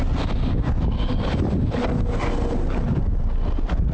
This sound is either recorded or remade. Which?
recorded